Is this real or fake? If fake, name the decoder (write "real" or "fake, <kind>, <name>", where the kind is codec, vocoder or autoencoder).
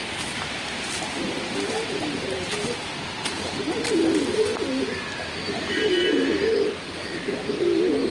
real